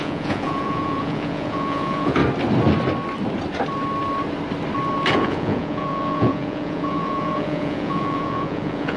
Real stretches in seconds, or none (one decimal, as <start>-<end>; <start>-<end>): 2.2-5.1